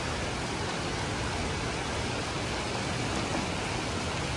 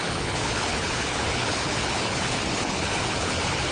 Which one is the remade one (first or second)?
second